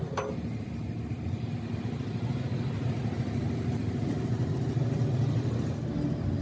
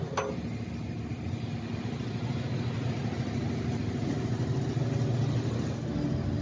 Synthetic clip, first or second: first